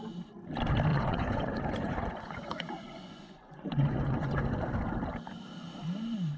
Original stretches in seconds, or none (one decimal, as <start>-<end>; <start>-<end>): 0.0-0.9; 4.7-6.4